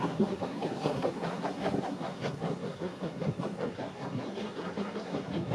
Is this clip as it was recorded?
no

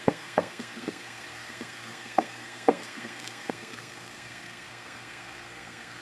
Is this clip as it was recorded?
no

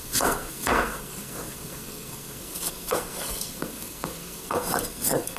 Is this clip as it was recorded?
no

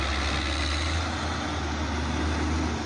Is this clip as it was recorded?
yes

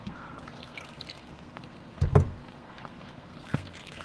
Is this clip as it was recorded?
no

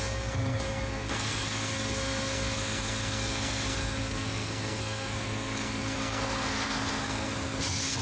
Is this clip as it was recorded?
no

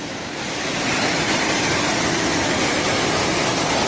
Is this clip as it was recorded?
yes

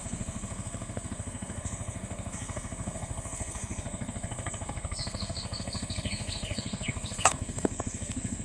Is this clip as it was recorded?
no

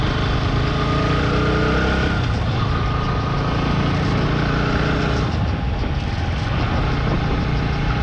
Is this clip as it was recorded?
yes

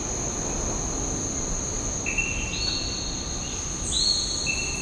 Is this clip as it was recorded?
yes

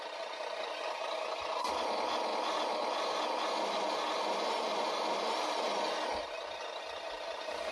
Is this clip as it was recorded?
yes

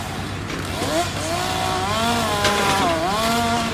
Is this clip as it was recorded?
yes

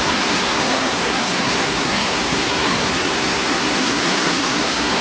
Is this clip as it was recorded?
no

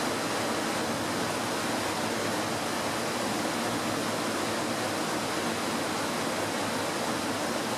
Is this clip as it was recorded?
yes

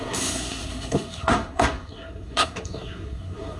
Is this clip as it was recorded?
no